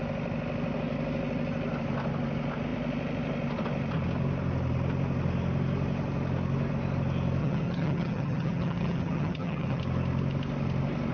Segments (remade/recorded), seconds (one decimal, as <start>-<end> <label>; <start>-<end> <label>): 0.0-7.4 recorded; 7.4-9.8 remade; 9.8-11.1 recorded

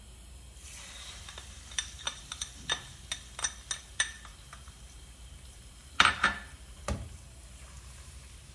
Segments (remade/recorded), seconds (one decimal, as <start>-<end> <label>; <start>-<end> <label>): 0.0-2.9 remade; 2.9-3.8 recorded; 3.8-8.5 remade

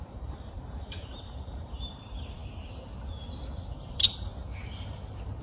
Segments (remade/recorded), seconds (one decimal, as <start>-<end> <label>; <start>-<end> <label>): 0.0-2.4 remade; 2.4-3.9 recorded; 3.9-4.3 remade; 4.3-5.4 recorded

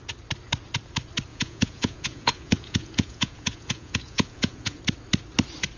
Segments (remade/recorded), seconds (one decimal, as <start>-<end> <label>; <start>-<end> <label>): 0.0-1.3 recorded; 1.3-4.8 remade; 4.8-5.8 recorded

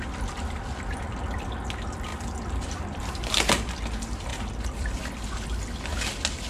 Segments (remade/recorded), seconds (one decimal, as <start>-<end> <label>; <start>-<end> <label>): 0.0-2.1 recorded; 2.1-3.0 remade; 3.0-4.3 recorded; 4.3-5.0 remade; 5.0-6.5 recorded